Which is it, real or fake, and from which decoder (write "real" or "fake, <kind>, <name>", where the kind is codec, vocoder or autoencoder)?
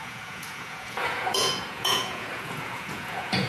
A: fake, vocoder, Vocos